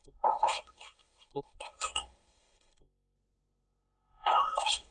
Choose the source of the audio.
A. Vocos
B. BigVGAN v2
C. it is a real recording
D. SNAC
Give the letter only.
D